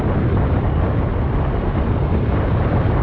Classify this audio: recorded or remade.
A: recorded